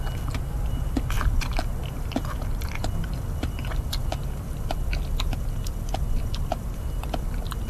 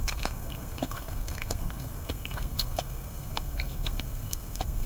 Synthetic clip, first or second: second